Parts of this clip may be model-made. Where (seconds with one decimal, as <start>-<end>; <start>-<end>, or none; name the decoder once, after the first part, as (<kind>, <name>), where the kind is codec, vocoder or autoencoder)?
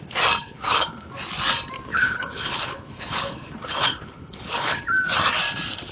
0.4-1.1 (codec, HILCodec); 1.9-4.8